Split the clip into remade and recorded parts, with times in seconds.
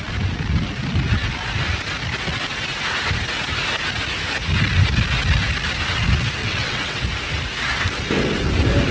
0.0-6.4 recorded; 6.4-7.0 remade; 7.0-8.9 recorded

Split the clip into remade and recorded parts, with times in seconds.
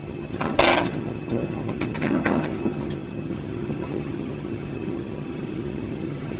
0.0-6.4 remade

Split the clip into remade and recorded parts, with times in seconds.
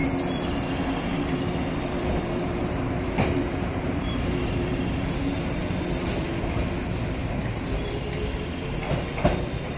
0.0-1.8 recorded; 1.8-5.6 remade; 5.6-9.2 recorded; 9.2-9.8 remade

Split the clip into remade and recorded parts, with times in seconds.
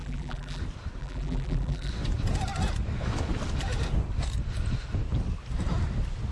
0.0-0.6 remade; 0.6-1.0 recorded; 1.0-1.9 remade; 1.9-6.3 recorded